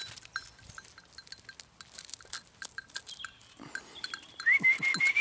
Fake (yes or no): no